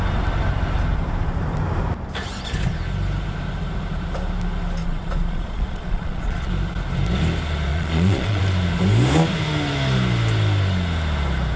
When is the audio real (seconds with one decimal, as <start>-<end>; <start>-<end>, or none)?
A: 0.0-4.8; 6.5-7.7; 8.4-11.6